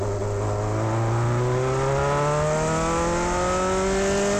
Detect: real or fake real